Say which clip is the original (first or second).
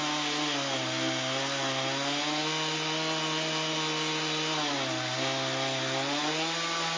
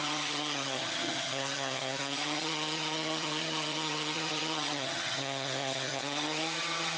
first